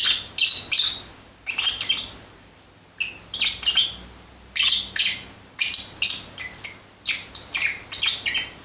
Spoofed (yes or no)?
no